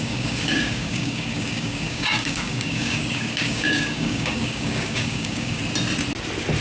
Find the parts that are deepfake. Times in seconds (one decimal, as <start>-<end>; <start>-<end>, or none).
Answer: 0.0-5.6